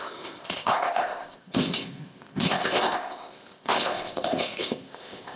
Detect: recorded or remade remade